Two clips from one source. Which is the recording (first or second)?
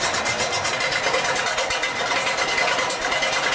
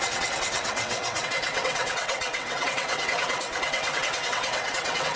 first